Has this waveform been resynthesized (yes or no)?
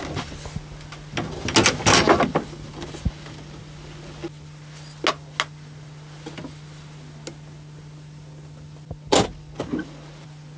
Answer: no